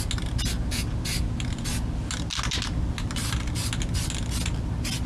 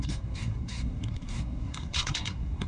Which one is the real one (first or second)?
first